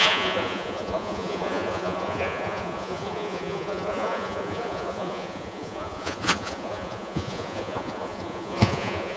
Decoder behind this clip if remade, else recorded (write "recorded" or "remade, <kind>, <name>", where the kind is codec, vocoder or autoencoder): remade, vocoder, Vocos